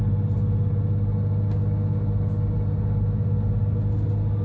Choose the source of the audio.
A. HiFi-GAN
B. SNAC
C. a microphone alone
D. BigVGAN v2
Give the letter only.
C